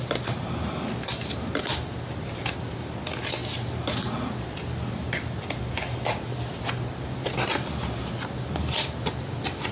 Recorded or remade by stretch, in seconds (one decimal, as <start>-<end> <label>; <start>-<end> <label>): 0.0-9.7 recorded